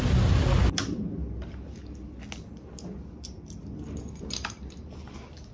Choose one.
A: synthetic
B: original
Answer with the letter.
B